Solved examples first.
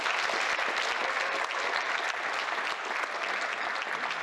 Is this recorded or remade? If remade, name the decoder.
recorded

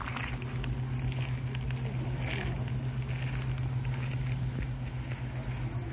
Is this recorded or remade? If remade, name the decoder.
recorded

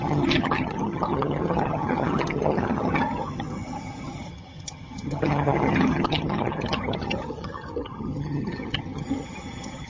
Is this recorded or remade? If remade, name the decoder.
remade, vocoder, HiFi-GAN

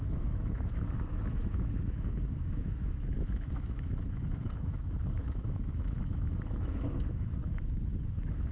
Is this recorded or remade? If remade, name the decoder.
remade, autoencoder, DAC-VAE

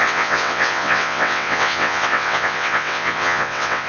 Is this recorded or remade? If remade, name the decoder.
remade, vocoder, WaveNeXt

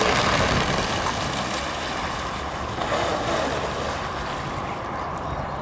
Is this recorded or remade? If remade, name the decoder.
recorded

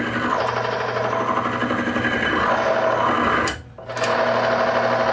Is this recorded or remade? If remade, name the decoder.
recorded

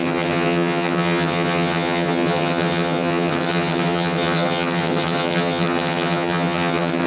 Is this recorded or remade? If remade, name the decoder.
remade, vocoder, HiFi-GAN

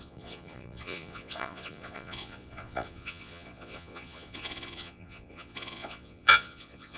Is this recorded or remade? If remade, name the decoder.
remade, vocoder, Vocos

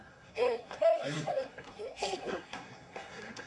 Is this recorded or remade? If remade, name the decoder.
remade, codec, SNAC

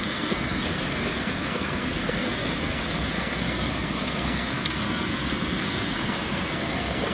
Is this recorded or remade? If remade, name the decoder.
remade, codec, SNAC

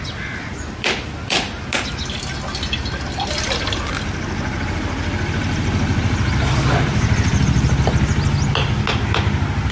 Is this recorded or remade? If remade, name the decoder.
recorded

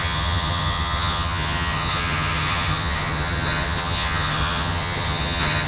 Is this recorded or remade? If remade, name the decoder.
remade, vocoder, HiFi-GAN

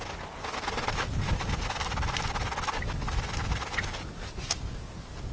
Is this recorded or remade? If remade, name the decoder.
recorded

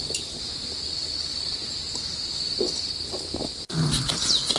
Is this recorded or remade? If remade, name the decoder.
recorded